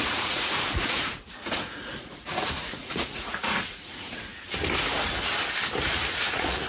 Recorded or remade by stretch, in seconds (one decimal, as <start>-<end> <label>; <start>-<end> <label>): 0.0-4.3 remade; 4.3-5.9 recorded; 5.9-6.7 remade